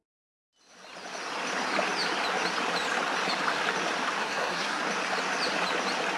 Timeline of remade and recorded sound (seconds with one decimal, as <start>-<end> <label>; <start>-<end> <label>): 0.0-4.2 recorded; 4.2-4.8 remade; 4.8-6.2 recorded